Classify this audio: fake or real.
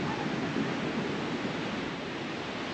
real